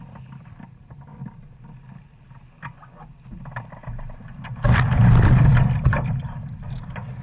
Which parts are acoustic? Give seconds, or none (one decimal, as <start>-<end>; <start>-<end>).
1.1-5.2